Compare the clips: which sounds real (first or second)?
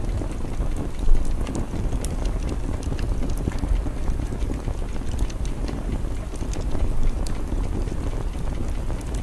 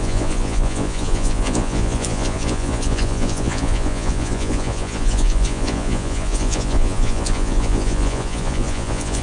first